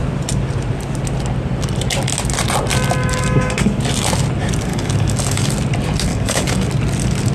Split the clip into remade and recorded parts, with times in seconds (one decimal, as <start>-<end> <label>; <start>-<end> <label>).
0.0-3.0 recorded; 3.0-3.8 remade; 3.8-4.7 recorded; 4.7-5.5 remade; 5.5-6.1 recorded; 6.1-6.7 remade; 6.7-7.3 recorded

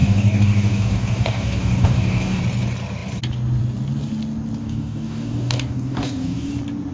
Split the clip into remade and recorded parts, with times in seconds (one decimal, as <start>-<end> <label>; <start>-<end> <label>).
0.0-2.4 remade; 2.4-4.6 recorded; 4.6-6.5 remade; 6.5-6.9 recorded